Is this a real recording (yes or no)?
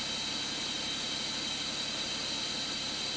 yes